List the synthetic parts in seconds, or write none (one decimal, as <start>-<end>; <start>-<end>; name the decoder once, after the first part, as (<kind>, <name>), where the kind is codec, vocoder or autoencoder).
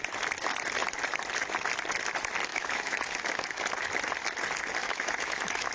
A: 2.5-3.6 (autoencoder, DAC-VAE); 4.8-5.7